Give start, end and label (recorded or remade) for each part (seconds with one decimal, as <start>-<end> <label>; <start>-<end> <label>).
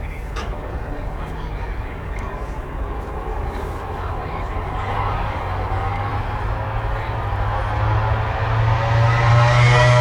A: 0.0-6.1 remade; 6.1-9.3 recorded; 9.3-10.0 remade